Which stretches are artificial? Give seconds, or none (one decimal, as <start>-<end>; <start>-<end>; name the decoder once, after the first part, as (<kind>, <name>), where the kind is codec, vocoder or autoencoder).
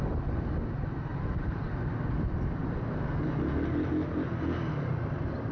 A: 1.1-1.7 (vocoder, BigVGAN v2)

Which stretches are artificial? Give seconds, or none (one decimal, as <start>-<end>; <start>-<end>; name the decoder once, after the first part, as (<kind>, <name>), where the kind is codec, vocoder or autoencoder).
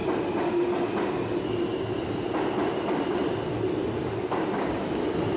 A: none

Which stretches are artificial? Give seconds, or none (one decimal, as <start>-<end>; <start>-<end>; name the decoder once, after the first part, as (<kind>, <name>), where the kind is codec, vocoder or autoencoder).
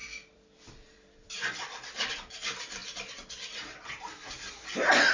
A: 0.0-2.1 (vocoder, BigVGAN v2); 2.8-4.5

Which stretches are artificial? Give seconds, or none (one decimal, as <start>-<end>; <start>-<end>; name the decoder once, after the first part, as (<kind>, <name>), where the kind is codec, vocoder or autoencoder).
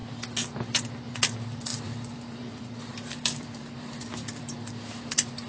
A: 1.7-4.5 (vocoder, BigVGAN v2)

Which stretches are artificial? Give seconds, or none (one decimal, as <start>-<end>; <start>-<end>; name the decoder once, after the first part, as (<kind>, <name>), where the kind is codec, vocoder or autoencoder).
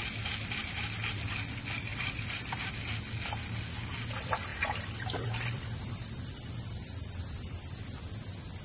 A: 1.9-2.7 (vocoder, BigVGAN v2); 4.5-8.0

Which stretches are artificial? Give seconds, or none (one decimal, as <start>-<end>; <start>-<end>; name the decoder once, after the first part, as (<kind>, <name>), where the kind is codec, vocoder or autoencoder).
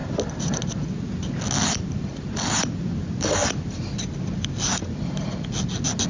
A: 1.7-3.4 (vocoder, BigVGAN v2)